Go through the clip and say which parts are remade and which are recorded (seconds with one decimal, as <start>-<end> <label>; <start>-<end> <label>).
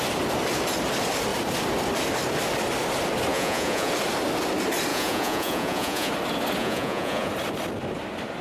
0.0-3.3 recorded; 3.3-3.9 remade; 3.9-4.9 recorded; 4.9-6.1 remade; 6.1-6.6 recorded; 6.6-7.3 remade; 7.3-8.4 recorded